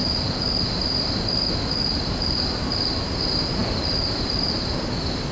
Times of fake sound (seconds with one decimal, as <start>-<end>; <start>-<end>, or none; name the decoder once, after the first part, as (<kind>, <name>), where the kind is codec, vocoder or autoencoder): none